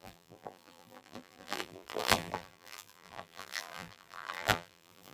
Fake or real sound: fake